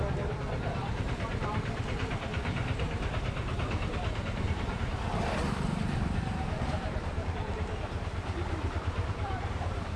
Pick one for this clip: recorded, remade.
remade